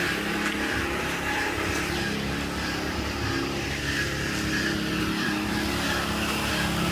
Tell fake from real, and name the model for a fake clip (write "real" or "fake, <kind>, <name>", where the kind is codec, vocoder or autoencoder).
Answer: real